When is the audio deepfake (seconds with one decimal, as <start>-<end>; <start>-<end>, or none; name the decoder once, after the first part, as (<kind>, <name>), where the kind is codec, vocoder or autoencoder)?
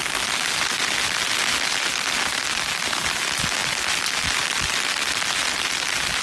none